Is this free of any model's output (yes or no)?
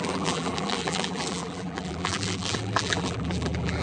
no